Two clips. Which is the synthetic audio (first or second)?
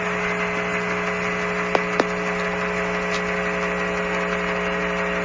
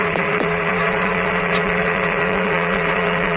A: second